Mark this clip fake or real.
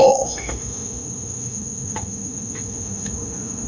fake